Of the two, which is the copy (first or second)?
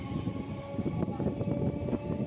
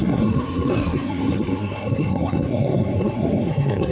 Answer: second